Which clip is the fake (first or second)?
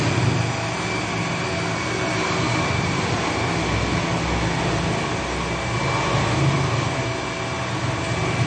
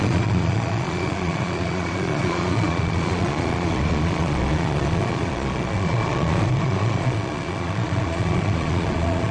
second